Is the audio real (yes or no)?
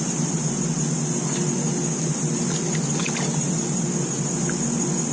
yes